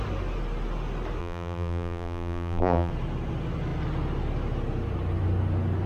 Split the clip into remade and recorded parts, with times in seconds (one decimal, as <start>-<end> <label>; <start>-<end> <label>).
0.0-1.2 recorded; 1.2-2.9 remade; 2.9-5.9 recorded